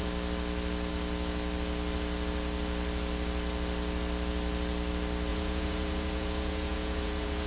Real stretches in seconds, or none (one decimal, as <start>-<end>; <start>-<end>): 0.0-5.3